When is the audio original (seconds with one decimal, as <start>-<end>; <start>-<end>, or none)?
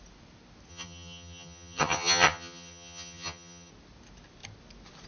0.0-0.7; 3.7-5.1